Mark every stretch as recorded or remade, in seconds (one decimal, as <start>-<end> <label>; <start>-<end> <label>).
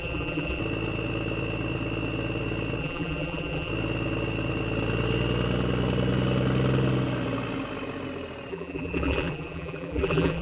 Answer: 0.0-0.6 remade; 0.6-2.8 recorded; 2.8-3.7 remade; 3.7-8.5 recorded; 8.5-10.4 remade